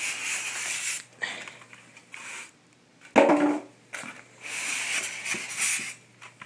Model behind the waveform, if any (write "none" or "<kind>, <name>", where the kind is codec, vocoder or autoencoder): none